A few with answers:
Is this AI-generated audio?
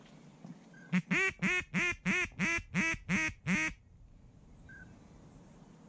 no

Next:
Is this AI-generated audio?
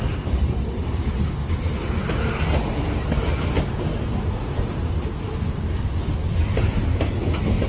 no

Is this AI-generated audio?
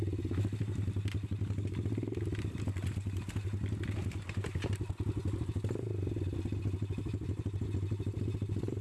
no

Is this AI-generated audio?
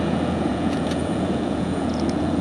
yes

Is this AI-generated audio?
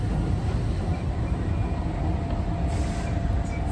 no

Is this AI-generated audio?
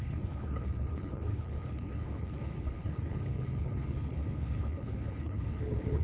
yes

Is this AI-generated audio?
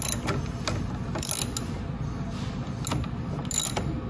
no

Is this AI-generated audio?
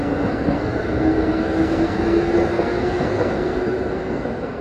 yes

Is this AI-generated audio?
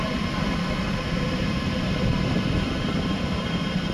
yes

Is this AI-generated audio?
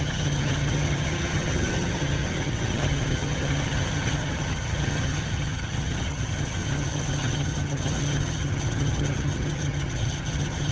yes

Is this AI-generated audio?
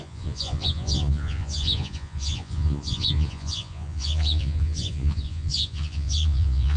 yes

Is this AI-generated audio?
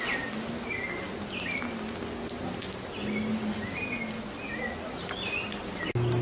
no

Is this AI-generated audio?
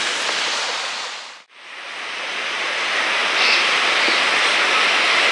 no